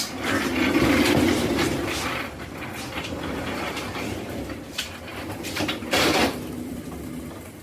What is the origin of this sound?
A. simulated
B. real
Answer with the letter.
A